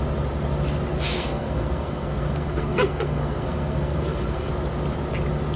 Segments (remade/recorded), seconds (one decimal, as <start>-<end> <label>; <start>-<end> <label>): 0.0-1.1 recorded; 1.1-4.5 remade; 4.5-5.6 recorded